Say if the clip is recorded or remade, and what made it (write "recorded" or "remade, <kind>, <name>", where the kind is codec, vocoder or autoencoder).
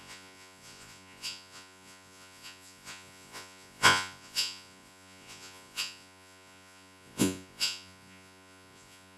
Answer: remade, vocoder, Vocos